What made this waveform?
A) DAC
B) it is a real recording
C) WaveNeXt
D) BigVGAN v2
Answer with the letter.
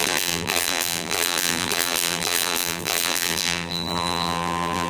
D